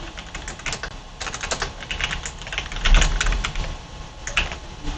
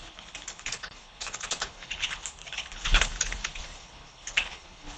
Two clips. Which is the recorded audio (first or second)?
first